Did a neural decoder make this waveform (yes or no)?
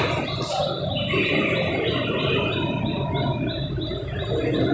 no